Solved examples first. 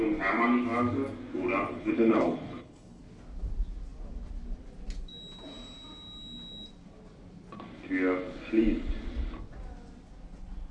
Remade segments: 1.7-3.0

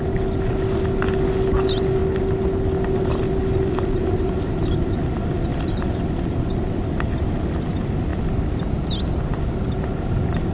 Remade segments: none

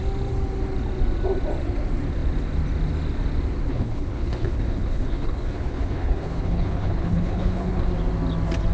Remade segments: 3.7-7.9